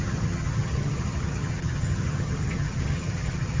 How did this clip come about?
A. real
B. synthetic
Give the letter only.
B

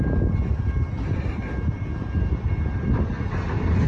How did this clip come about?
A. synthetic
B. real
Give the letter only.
B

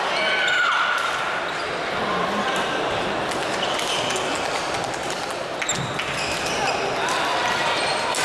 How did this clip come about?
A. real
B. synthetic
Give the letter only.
A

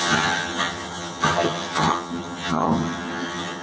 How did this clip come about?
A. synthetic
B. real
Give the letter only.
A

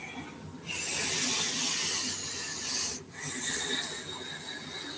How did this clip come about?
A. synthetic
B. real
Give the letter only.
B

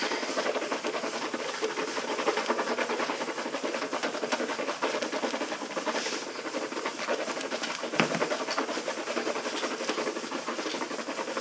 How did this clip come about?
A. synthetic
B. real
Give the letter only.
B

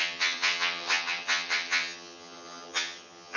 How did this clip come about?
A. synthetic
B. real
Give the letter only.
A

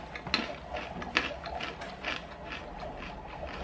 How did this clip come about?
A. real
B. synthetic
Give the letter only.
A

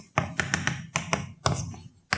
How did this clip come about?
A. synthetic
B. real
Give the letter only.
B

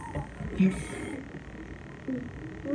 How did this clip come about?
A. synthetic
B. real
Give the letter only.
B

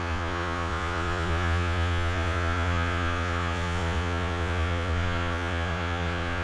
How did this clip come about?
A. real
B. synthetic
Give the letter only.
B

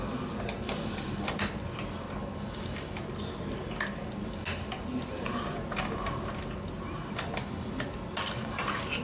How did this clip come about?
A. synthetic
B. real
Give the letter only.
B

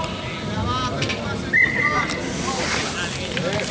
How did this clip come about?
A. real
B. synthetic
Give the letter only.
A